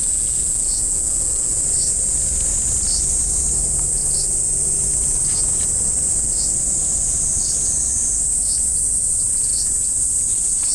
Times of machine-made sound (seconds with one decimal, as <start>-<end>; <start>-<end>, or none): 0.0-1.6